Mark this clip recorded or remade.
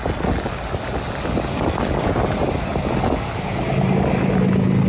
recorded